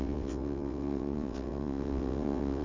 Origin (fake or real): fake